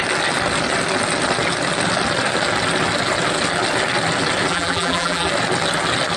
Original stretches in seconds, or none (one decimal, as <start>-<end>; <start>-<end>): 0.0-4.5; 5.3-6.2

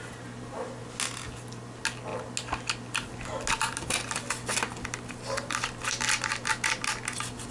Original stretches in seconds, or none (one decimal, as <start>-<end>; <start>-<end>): 0.0-7.5

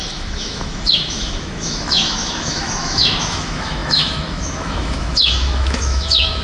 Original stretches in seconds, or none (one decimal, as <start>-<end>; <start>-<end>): none

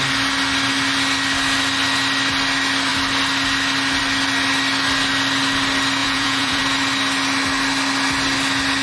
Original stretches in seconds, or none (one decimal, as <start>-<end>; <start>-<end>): 0.0-6.0; 6.6-8.8

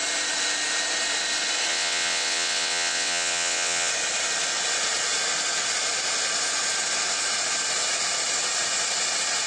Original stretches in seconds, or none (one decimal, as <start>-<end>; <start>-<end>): 0.0-1.7; 3.9-9.5